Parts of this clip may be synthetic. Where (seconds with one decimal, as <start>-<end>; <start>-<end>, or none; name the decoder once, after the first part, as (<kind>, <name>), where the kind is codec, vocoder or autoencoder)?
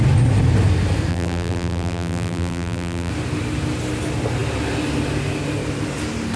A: 1.1-3.1 (vocoder, BigVGAN v2)